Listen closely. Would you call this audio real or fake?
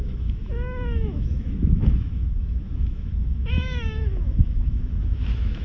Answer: fake